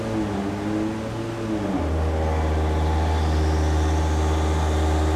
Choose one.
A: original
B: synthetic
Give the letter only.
A